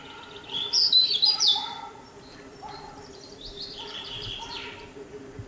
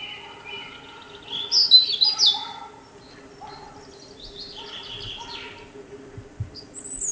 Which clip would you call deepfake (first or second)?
first